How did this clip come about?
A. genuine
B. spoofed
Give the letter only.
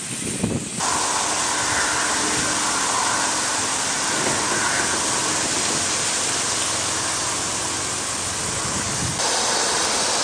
A